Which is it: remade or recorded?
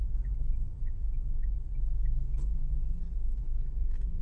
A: recorded